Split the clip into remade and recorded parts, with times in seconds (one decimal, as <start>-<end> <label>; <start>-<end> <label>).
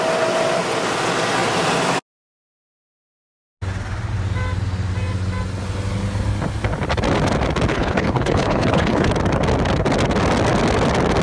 0.0-7.7 recorded; 7.7-9.1 remade; 9.1-11.2 recorded